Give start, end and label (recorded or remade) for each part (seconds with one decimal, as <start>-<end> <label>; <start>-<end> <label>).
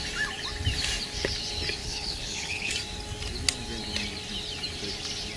0.0-1.8 recorded; 1.8-2.7 remade; 2.7-5.4 recorded